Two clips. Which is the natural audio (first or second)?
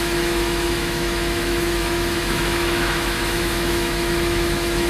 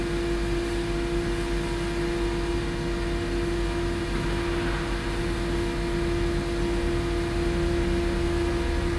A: second